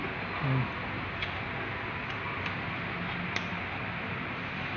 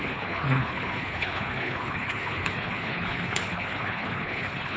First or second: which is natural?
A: first